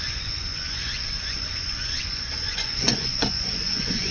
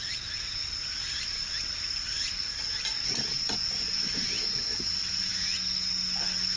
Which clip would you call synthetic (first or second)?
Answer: first